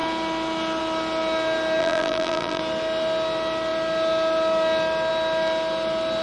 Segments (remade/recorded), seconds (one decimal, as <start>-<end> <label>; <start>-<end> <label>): 0.0-1.8 recorded; 1.8-2.6 remade; 2.6-6.2 recorded